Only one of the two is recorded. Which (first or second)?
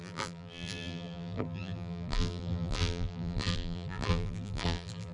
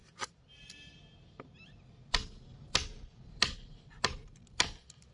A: second